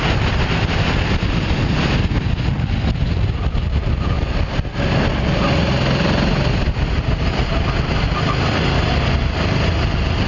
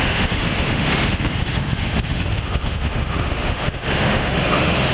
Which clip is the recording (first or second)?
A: first